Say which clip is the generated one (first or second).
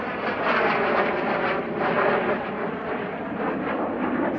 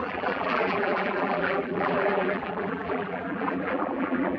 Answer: second